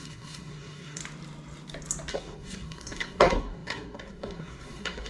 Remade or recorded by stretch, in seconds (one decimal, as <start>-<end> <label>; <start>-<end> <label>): 0.0-1.0 remade; 1.0-2.1 recorded; 2.1-5.1 remade